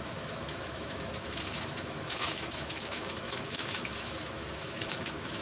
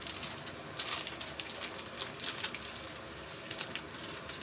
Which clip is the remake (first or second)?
first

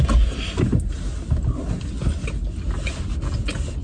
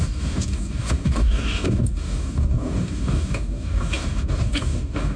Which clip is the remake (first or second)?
second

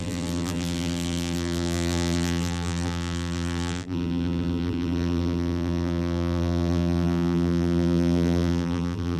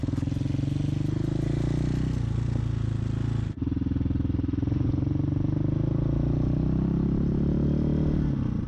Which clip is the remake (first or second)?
first